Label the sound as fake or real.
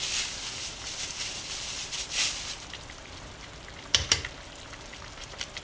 fake